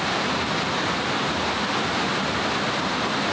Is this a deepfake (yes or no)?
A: no